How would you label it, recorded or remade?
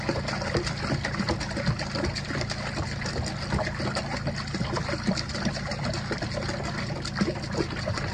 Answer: recorded